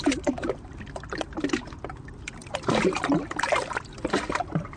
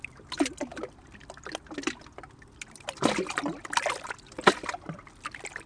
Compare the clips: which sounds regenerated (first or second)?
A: first